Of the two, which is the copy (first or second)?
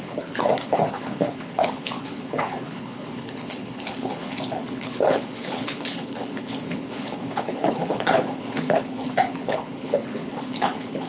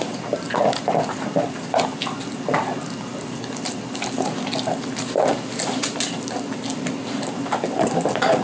first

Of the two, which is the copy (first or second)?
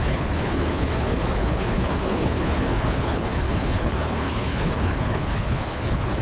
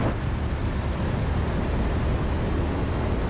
first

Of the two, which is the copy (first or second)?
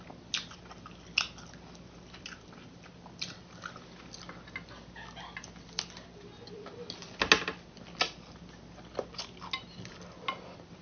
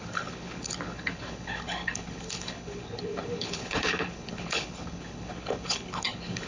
second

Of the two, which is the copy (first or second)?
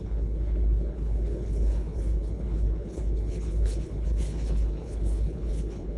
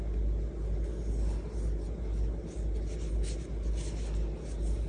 first